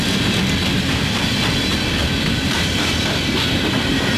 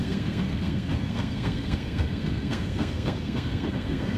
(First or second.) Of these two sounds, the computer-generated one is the second